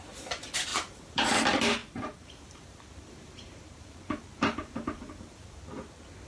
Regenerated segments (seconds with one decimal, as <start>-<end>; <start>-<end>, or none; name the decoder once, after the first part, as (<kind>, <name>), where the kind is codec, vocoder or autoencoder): 0.7-1.3 (vocoder, BigVGAN v2); 1.8-5.6